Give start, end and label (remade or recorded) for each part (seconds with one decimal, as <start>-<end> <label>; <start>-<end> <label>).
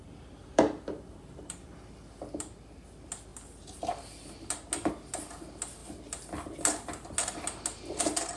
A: 0.0-0.4 recorded; 0.4-1.4 remade; 1.4-8.4 recorded